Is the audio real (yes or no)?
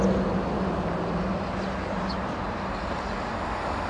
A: yes